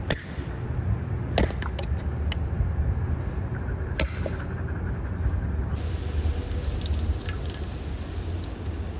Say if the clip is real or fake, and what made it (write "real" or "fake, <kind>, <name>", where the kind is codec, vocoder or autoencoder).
real